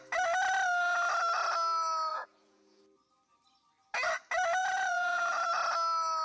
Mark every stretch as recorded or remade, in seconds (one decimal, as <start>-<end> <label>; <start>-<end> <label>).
0.0-2.1 recorded; 2.1-2.8 remade; 2.8-4.6 recorded; 4.6-5.5 remade; 5.5-6.2 recorded